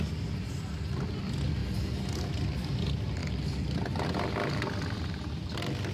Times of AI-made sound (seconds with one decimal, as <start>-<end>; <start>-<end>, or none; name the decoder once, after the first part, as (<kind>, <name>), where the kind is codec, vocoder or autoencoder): none